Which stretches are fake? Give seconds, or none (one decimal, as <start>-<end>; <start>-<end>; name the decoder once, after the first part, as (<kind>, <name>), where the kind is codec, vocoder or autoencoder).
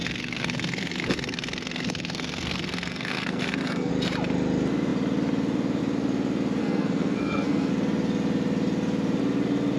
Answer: 0.0-3.9 (codec, SNAC); 6.6-7.7